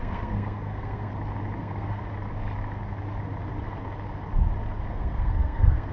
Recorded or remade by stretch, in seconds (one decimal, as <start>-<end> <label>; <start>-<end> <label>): 0.0-1.1 remade; 1.1-1.6 recorded; 1.6-2.0 remade; 2.0-4.9 recorded; 4.9-5.9 remade